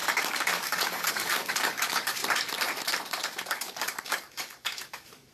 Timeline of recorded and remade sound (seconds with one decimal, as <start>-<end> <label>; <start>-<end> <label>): 0.0-2.2 remade; 2.2-3.5 recorded; 3.5-5.3 remade